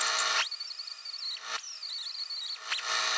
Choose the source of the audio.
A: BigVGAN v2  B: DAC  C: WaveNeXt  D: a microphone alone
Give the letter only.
D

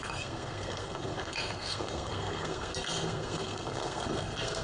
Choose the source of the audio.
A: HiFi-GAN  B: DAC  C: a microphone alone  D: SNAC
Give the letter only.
D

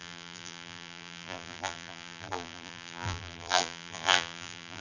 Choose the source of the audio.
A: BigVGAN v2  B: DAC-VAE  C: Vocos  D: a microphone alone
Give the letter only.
A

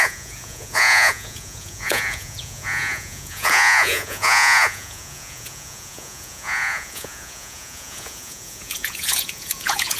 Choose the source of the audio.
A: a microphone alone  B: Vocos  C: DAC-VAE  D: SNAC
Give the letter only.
B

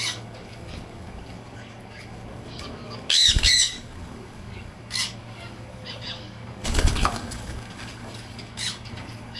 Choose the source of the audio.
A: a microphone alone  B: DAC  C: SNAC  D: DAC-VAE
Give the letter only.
B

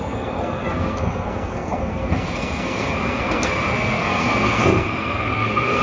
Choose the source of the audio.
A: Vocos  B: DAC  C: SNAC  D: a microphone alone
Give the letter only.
C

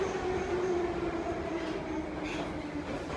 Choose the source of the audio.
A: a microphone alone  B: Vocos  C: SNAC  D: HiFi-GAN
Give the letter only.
A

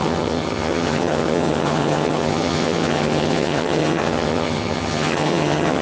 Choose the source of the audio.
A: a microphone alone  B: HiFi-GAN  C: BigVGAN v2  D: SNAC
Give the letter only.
B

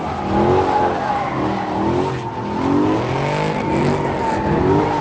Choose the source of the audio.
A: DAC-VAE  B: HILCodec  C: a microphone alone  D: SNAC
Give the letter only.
C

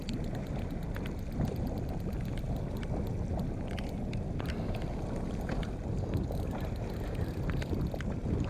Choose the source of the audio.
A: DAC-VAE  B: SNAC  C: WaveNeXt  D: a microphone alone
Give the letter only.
D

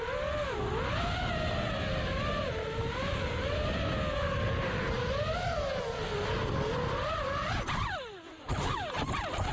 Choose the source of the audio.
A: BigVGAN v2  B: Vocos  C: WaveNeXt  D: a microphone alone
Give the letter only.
D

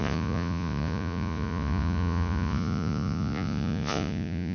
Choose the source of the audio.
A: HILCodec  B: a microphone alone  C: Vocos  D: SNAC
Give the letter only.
C